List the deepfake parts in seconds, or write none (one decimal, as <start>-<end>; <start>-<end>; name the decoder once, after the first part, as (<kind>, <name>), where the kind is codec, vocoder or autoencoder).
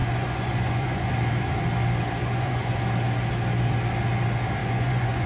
0.0-1.1 (vocoder, Vocos); 2.2-2.8; 4.6-5.3